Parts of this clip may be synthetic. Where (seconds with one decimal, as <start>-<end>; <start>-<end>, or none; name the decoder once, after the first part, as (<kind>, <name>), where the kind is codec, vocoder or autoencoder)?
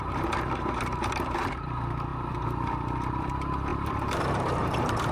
0.0-5.1 (vocoder, BigVGAN v2)